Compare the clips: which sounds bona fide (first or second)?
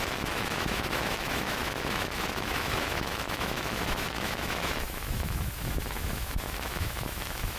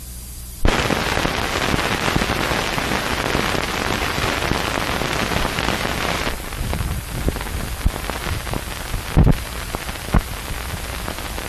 second